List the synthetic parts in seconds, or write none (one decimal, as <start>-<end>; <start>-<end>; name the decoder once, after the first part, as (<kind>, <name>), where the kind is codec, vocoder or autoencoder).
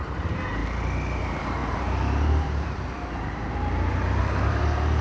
0.0-0.6 (vocoder, BigVGAN v2); 1.2-5.0